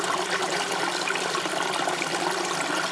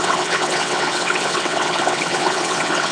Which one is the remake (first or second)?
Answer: second